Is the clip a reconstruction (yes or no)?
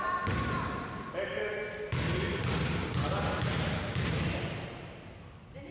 no